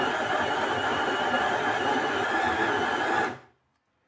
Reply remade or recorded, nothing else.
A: recorded